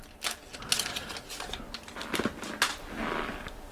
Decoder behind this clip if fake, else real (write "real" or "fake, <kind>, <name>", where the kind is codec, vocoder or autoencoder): real